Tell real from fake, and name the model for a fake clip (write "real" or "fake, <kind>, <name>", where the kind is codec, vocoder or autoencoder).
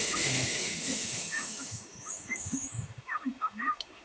fake, autoencoder, DAC-VAE